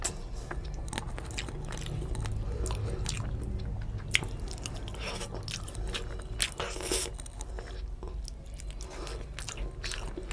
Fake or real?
real